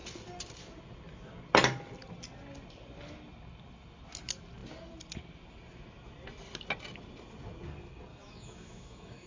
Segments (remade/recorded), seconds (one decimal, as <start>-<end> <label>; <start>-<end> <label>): 0.0-8.1 recorded; 8.1-9.3 remade

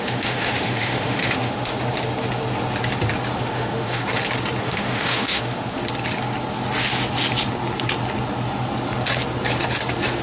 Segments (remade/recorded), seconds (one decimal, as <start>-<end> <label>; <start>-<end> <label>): 0.0-1.7 remade; 1.7-3.4 recorded; 3.4-4.0 remade; 4.0-4.6 recorded; 4.6-5.8 remade; 5.8-10.2 recorded

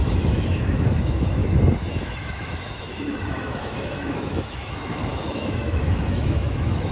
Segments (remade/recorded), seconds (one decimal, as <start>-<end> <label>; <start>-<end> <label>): 0.0-1.4 remade; 1.4-1.9 recorded; 1.9-6.9 remade